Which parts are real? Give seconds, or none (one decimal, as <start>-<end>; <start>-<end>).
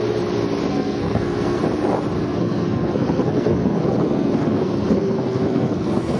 0.0-0.7; 1.6-2.2